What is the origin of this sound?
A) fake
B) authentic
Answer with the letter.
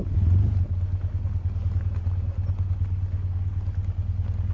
B